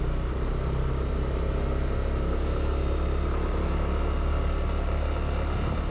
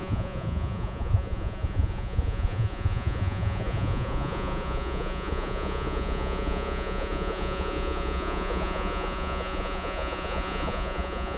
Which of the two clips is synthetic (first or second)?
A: second